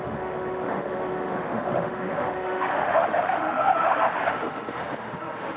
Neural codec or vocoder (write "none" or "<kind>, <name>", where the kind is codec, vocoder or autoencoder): autoencoder, DAC-VAE